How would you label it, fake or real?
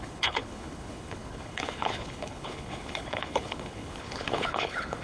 fake